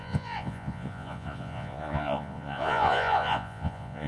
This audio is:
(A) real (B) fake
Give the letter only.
B